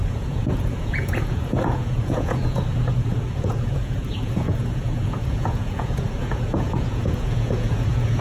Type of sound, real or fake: fake